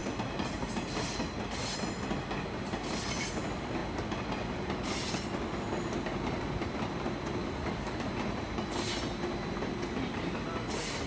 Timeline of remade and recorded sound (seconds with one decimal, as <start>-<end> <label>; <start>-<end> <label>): 0.0-7.4 recorded; 7.4-8.1 remade; 8.1-11.1 recorded